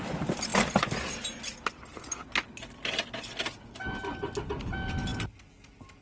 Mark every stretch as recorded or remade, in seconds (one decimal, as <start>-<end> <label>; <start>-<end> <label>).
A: 0.0-6.0 recorded